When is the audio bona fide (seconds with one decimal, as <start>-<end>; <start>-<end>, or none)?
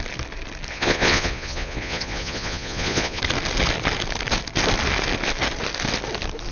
0.0-0.7; 3.2-6.5